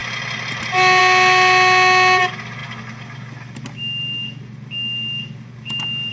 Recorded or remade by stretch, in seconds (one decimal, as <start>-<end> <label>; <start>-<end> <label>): 0.0-6.1 recorded